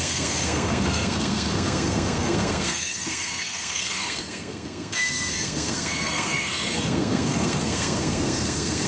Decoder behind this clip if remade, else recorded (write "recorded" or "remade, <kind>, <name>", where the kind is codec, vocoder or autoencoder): remade, codec, SNAC